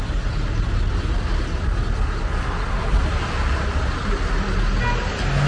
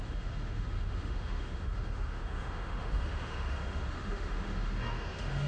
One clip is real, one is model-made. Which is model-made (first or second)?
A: second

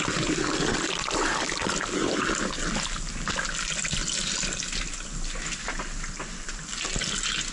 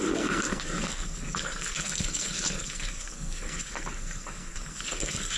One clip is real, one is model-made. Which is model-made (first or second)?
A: second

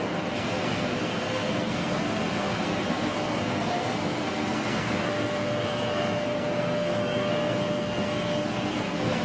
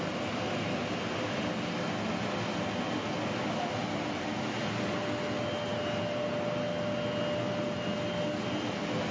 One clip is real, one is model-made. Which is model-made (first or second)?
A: first